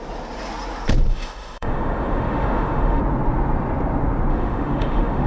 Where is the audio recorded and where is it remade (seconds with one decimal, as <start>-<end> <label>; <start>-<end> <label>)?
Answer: 0.0-1.1 recorded; 1.1-3.0 remade; 3.0-4.3 recorded; 4.3-5.3 remade